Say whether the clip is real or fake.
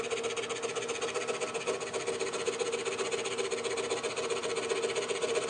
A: real